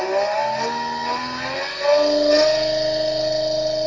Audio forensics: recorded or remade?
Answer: recorded